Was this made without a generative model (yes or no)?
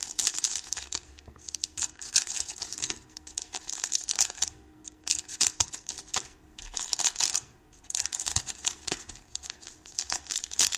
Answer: no